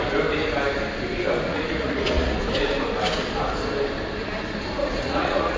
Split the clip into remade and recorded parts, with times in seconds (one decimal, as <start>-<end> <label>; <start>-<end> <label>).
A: 0.0-1.5 recorded; 1.5-2.4 remade; 2.4-4.8 recorded; 4.8-5.6 remade